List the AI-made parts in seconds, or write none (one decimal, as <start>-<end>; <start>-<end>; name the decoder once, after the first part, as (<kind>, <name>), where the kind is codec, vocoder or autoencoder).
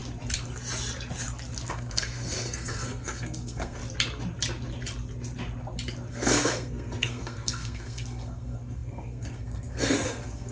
1.7-3.8 (codec, SNAC); 6.1-10.5